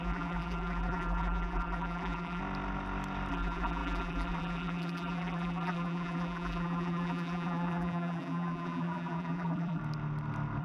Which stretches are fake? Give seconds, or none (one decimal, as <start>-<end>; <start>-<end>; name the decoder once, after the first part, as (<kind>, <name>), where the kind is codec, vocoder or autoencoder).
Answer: 0.0-2.4 (vocoder, BigVGAN v2); 3.3-9.8